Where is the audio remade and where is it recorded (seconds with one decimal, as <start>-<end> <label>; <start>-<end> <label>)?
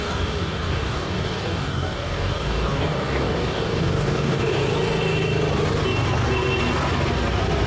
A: 0.0-4.6 remade; 4.6-7.7 recorded